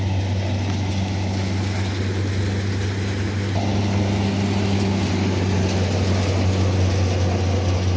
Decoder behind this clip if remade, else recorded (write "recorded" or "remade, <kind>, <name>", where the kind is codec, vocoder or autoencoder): recorded